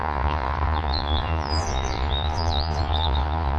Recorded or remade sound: remade